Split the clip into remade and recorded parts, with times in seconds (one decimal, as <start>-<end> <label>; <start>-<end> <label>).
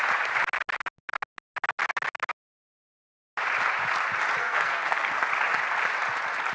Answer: 0.0-4.4 recorded; 4.4-5.2 remade; 5.2-6.5 recorded